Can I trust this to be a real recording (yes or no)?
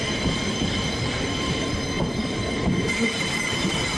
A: no